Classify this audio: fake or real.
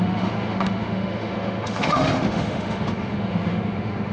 fake